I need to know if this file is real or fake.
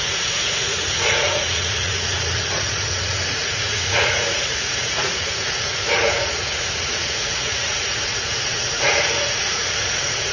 fake